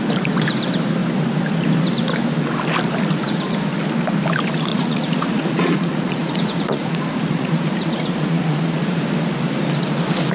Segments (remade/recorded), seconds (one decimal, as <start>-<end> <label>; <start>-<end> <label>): 0.0-4.7 recorded; 4.7-9.0 remade; 9.0-10.3 recorded